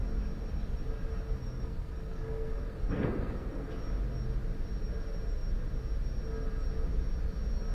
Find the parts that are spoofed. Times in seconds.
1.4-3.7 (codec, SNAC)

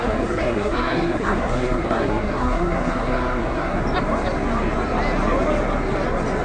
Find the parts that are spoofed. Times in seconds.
0.0-3.8 (codec, SNAC)

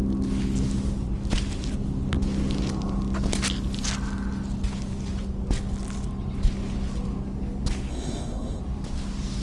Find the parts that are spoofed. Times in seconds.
7.9-8.6 (codec, SNAC)